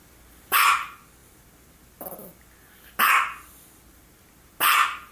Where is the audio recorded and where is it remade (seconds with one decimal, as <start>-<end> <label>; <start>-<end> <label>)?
0.0-5.1 recorded